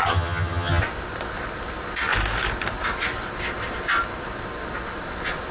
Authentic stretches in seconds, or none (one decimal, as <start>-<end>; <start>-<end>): 0.8-5.5